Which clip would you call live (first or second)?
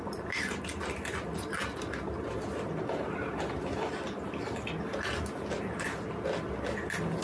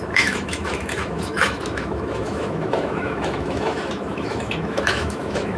first